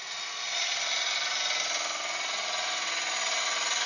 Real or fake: real